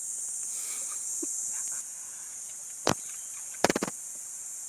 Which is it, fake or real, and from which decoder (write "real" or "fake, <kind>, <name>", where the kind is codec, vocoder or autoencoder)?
fake, vocoder, Vocos